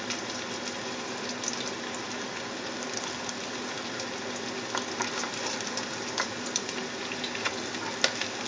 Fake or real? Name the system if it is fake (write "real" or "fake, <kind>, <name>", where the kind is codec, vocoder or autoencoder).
real